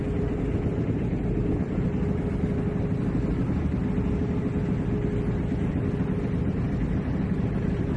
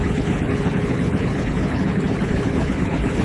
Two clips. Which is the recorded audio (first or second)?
first